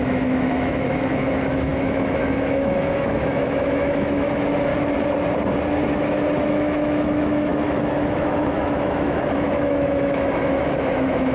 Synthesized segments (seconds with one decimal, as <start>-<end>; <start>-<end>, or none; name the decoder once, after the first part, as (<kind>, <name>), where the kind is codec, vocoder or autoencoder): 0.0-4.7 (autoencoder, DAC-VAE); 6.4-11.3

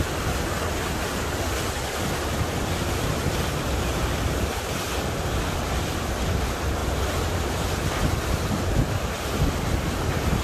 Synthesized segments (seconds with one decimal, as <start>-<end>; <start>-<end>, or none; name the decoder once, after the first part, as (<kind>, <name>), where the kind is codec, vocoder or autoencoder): none

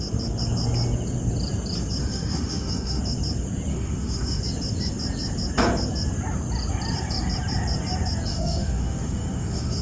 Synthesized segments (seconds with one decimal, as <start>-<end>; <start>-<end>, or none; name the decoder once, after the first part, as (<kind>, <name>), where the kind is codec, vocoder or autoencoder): 2.0-3.0 (autoencoder, DAC-VAE); 3.7-4.4; 8.3-9.8

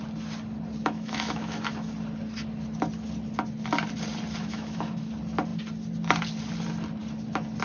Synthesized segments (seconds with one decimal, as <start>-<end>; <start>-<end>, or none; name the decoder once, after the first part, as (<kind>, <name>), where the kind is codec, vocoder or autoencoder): 0.8-1.9 (autoencoder, DAC-VAE); 4.4-5.1

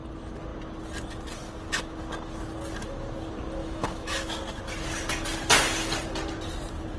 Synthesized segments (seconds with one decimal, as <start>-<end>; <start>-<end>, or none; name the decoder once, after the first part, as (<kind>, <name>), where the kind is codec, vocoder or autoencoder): 3.6-4.3 (autoencoder, DAC-VAE)

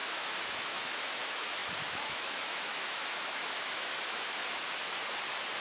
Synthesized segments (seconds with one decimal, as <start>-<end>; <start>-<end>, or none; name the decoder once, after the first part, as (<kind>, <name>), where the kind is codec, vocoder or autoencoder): 0.0-4.4 (autoencoder, DAC-VAE)

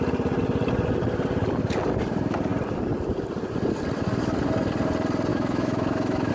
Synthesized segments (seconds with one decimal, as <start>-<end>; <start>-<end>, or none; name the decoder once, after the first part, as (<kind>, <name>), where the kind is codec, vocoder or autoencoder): 5.3-6.3 (autoencoder, DAC-VAE)

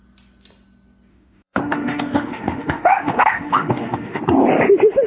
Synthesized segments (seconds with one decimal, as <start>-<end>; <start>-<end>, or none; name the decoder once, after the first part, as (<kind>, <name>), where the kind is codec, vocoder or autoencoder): 1.1-4.2 (autoencoder, DAC-VAE)